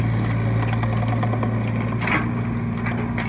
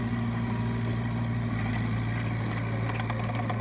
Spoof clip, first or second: second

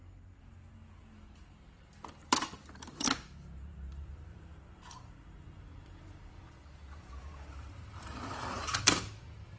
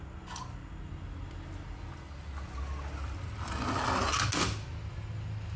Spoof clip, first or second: first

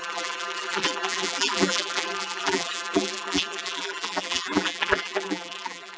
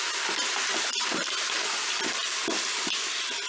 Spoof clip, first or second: first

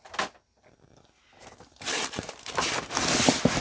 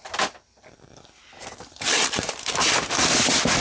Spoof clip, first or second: second